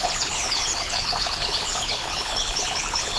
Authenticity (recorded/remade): remade